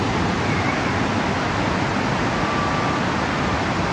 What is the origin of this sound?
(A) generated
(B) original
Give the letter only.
B